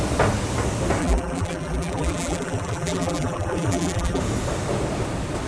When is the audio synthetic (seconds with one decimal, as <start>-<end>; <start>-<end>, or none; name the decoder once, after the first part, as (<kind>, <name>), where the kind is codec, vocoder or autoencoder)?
1.0-4.2 (vocoder, BigVGAN v2)